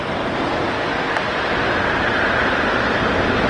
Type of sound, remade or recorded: recorded